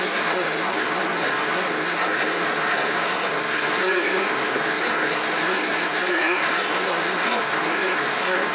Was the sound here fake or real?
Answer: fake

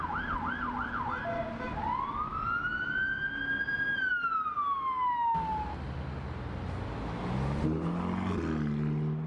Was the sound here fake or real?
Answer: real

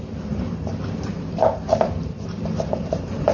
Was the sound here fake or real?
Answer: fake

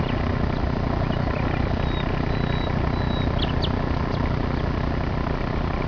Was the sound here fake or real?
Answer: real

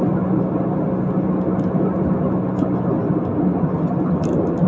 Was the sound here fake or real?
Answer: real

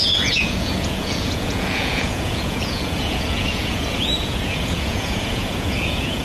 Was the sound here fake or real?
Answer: fake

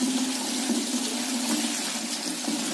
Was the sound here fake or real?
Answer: real